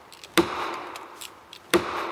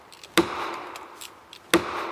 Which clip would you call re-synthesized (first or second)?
first